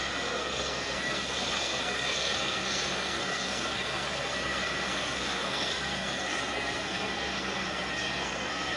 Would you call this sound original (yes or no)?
no